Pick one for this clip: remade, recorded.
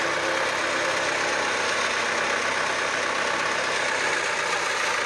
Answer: recorded